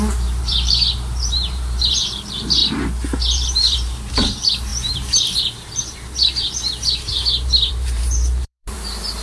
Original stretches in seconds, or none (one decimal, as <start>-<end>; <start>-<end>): 2.6-3.2